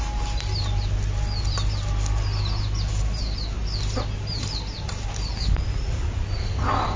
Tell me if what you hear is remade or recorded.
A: recorded